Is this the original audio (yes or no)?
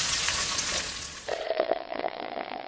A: no